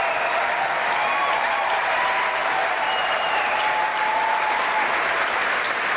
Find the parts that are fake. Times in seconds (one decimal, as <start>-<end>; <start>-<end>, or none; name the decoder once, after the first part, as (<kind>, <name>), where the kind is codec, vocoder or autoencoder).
1.2-2.0 (vocoder, BigVGAN v2); 2.4-3.8

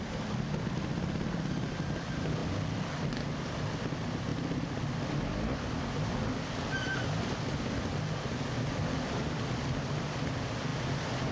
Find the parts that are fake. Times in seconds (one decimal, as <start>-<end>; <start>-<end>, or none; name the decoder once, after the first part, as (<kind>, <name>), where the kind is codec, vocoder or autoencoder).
none

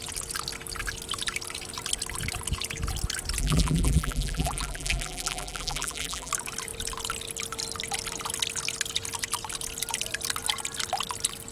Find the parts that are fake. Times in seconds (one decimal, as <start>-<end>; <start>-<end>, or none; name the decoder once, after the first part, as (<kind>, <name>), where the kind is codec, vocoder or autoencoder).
3.4-6.3 (vocoder, BigVGAN v2)